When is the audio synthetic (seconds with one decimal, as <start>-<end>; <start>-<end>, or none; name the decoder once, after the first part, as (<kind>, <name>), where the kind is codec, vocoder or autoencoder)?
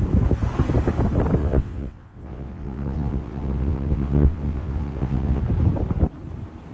1.4-5.4 (vocoder, WaveNeXt)